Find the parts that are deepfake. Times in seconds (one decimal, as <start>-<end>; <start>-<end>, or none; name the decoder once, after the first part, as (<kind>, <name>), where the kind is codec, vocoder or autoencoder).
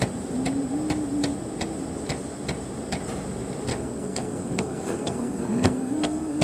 3.7-6.4 (codec, SNAC)